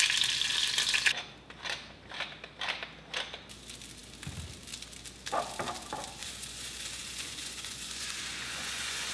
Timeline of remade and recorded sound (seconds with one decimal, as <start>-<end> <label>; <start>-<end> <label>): 0.0-6.2 recorded; 6.2-9.1 remade